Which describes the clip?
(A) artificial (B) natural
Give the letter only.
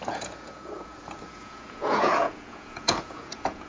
A